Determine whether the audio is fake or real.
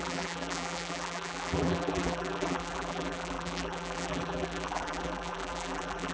fake